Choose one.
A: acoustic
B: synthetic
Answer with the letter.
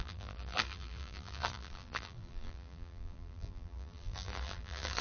B